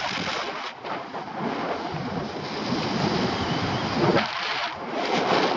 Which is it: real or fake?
real